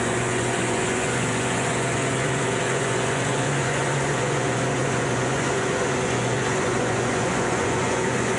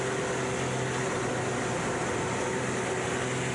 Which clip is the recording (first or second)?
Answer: second